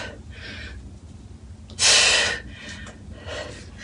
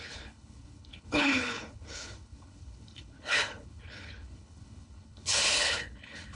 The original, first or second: first